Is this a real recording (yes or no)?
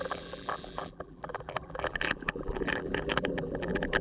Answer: no